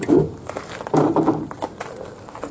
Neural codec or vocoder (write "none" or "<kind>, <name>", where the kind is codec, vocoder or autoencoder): none